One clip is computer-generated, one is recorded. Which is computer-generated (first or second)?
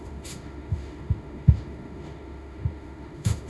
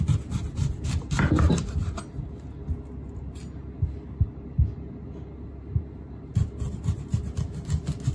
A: first